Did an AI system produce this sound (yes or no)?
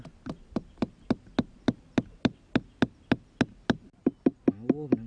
no